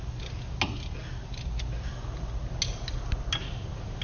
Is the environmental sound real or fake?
real